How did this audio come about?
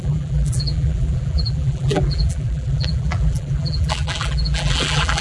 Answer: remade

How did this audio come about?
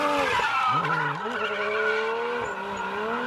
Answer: recorded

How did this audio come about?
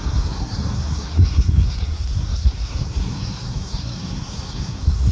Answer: remade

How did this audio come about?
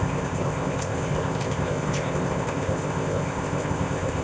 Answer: remade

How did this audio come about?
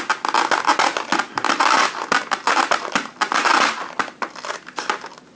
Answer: recorded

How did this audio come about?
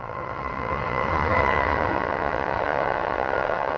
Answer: remade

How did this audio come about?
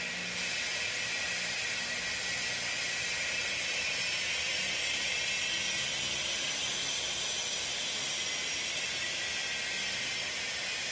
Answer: recorded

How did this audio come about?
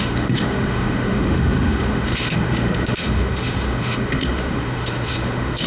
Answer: remade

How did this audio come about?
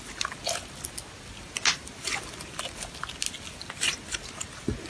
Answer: recorded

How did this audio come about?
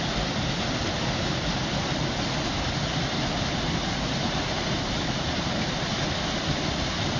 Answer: recorded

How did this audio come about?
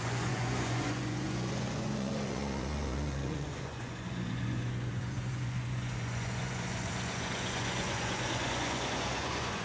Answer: remade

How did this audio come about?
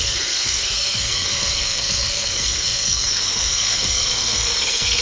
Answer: remade